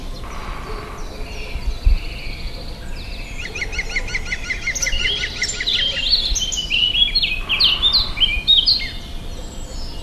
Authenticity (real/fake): real